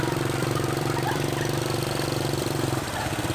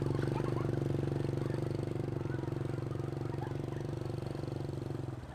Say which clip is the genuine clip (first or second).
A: second